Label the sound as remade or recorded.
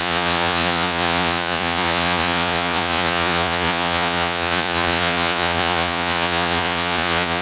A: remade